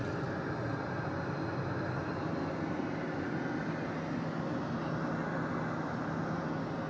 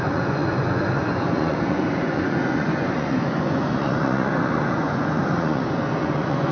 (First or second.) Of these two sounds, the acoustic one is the first